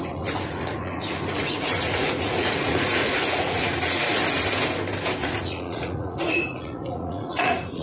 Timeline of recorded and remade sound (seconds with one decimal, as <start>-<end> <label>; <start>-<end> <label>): 0.0-4.2 remade; 4.2-5.2 recorded; 5.2-7.8 remade